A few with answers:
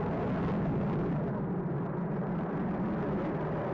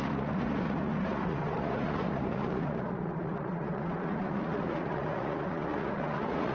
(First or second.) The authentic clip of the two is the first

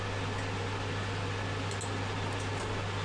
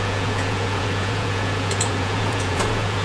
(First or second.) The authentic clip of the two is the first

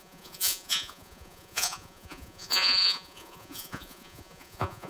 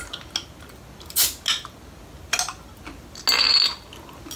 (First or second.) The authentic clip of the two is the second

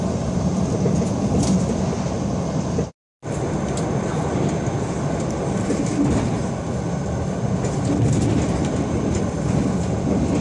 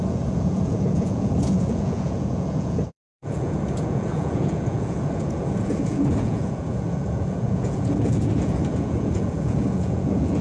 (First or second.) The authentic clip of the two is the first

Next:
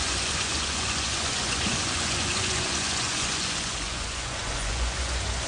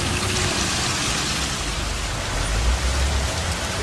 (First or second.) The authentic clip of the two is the second